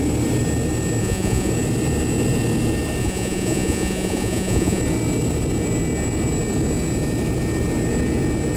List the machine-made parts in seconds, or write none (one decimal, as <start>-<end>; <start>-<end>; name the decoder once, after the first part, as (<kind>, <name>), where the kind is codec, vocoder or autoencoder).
1.0-1.5 (vocoder, Vocos); 3.0-4.8